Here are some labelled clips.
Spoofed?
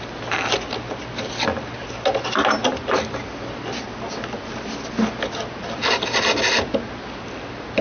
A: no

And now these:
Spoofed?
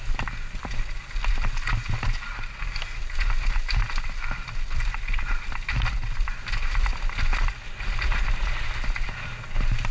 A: no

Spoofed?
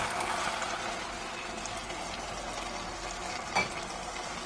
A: no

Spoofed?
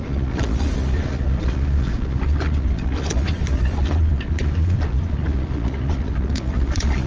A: yes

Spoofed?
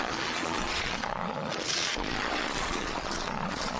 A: yes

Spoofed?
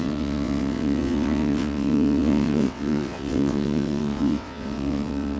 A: yes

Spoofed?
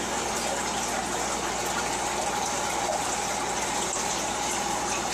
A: no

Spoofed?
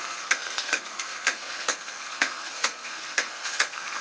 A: yes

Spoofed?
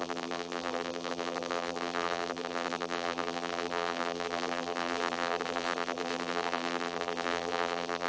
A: yes